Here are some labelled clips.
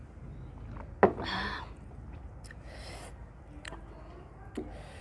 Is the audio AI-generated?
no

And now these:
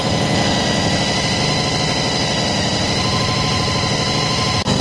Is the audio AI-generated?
no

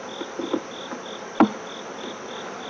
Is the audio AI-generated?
no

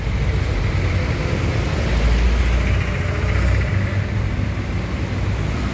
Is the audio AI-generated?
no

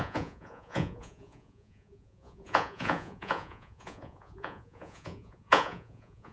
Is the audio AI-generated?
yes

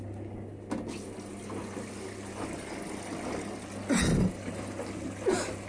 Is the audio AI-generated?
no